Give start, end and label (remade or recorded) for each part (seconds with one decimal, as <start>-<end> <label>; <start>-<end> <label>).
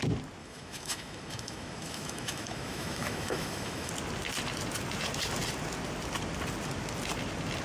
0.0-0.4 recorded; 0.4-3.9 remade; 3.9-7.6 recorded